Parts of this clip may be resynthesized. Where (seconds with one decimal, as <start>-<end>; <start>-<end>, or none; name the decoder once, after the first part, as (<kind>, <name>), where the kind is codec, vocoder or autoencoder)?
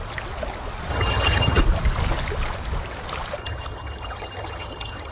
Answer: 0.9-1.6 (vocoder, HiFi-GAN); 3.4-5.1